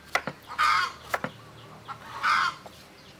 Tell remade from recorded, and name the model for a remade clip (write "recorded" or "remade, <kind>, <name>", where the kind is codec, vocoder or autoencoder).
recorded